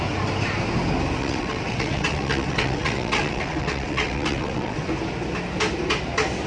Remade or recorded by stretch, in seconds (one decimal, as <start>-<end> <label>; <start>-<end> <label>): 0.0-1.2 recorded; 1.2-4.9 remade; 4.9-6.5 recorded